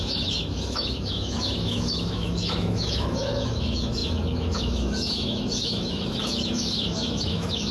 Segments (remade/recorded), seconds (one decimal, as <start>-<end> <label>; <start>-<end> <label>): 0.0-7.7 remade